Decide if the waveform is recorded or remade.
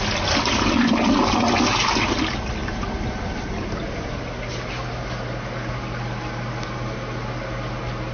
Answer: recorded